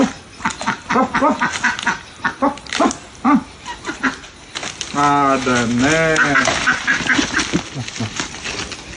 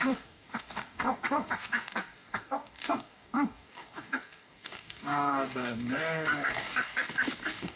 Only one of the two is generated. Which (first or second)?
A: second